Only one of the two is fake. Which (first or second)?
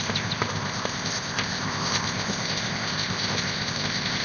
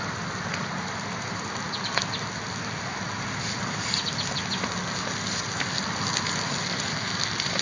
first